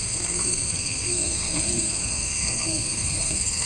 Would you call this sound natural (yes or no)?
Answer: no